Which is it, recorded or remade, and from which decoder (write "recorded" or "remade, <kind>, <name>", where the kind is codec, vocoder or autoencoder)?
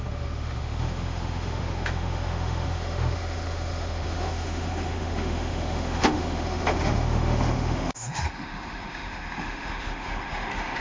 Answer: remade, autoencoder, DAC-VAE